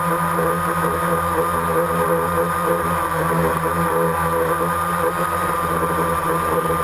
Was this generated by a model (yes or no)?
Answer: no